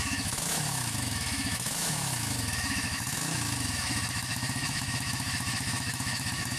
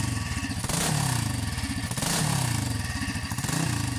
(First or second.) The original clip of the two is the second